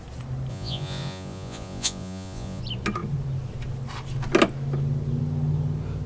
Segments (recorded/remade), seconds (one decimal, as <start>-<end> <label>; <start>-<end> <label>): 0.0-0.5 recorded; 0.5-2.6 remade; 2.6-6.1 recorded